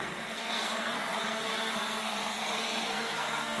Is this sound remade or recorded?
remade